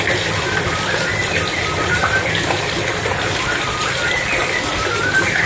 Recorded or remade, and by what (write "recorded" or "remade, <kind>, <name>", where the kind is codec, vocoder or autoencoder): recorded